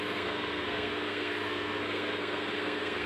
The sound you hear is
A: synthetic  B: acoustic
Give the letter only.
A